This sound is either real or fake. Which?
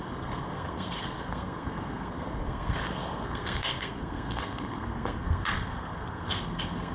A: fake